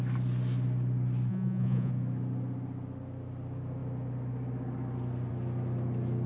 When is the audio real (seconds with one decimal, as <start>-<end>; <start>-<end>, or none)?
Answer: 0.0-1.3; 1.9-6.3